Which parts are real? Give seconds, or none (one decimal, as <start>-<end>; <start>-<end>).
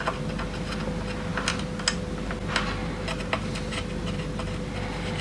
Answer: 0.0-5.2